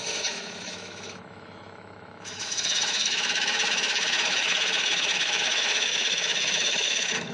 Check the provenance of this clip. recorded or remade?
remade